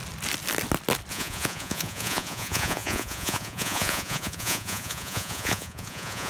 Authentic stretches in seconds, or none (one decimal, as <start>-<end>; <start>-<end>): 0.0-1.1